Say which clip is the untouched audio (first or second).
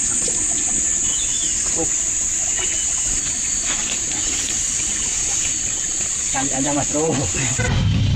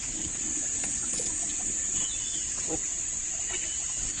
first